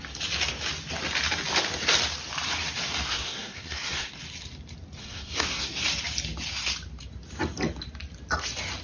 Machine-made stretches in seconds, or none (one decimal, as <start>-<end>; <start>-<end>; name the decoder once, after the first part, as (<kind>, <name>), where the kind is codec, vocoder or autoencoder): 3.1-4.1 (codec, SNAC); 5.0-5.8